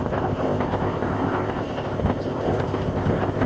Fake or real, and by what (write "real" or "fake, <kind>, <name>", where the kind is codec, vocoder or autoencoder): fake, codec, ZipCodec